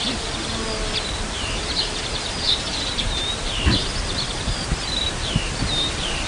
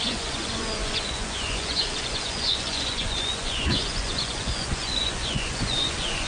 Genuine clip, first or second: first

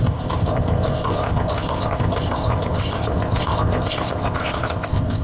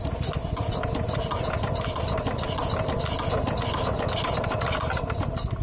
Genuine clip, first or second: second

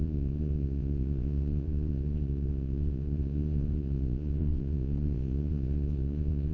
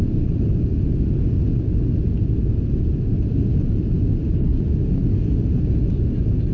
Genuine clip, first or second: second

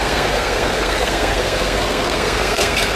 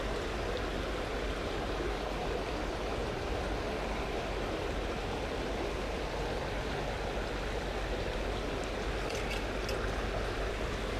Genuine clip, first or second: second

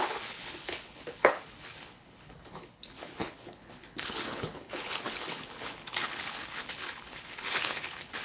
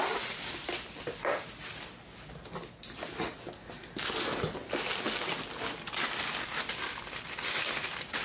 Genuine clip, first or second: second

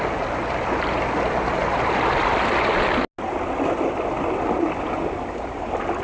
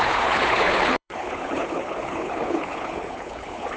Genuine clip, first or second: first